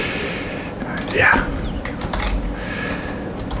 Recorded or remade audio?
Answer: recorded